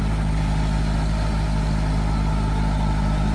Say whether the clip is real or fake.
real